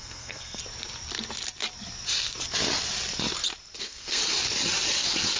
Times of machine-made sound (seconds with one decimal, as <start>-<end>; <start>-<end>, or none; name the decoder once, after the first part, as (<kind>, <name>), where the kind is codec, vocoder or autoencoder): 0.0-0.6 (codec, SNAC); 3.8-4.2